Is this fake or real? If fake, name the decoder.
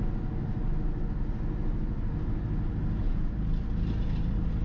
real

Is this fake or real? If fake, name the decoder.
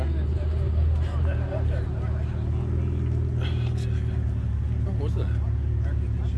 real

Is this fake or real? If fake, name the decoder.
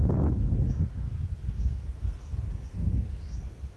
fake, codec, SNAC